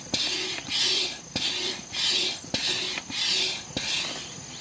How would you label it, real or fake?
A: real